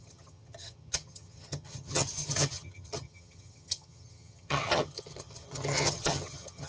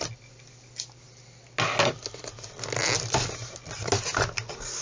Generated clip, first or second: first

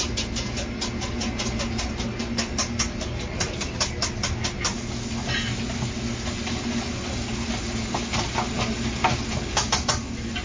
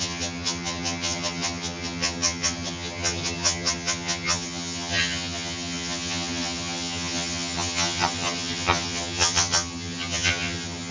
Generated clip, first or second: second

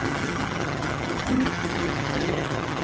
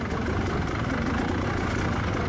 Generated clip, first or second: first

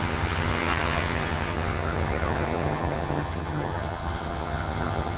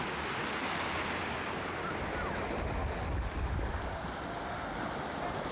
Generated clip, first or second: first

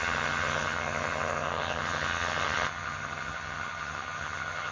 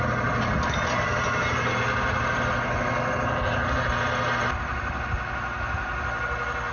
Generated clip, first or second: first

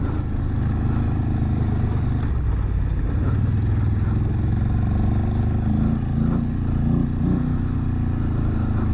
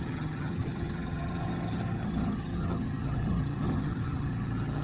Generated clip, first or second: second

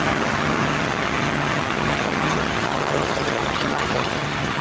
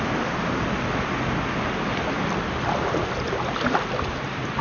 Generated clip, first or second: first